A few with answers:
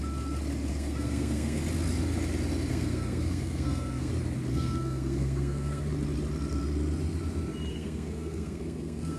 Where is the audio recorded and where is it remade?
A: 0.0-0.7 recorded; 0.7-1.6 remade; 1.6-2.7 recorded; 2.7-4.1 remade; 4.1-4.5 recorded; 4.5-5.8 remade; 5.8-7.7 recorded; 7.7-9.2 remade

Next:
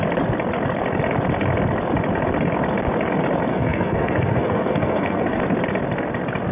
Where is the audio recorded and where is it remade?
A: 0.0-3.5 recorded; 3.5-5.4 remade; 5.4-6.5 recorded

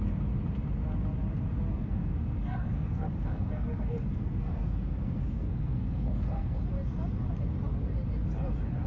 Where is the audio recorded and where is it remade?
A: 0.0-1.7 recorded; 1.7-6.6 remade; 6.6-8.9 recorded

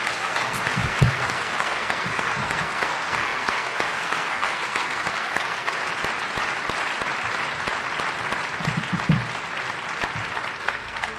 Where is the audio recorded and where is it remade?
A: 0.0-5.8 remade; 5.8-10.6 recorded; 10.6-11.2 remade

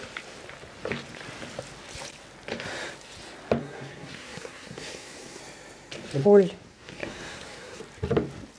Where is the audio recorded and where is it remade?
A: 0.0-3.6 recorded; 3.6-5.4 remade; 5.4-6.7 recorded; 6.7-7.8 remade; 7.8-8.6 recorded

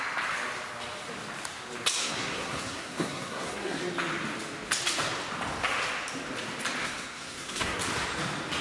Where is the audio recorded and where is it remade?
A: 0.0-2.0 recorded; 2.0-3.8 remade; 3.8-6.8 recorded; 6.8-7.8 remade; 7.8-8.6 recorded

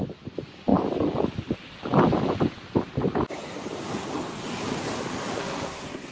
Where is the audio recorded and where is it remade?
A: 0.0-5.4 recorded; 5.4-6.1 remade